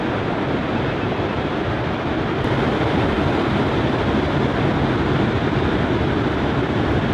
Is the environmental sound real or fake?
real